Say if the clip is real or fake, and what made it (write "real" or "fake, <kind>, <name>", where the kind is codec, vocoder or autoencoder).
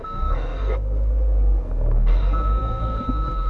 fake, codec, SNAC